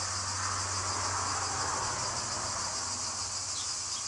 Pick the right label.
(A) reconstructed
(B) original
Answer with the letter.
B